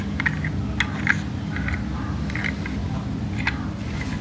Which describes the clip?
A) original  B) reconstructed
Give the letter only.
A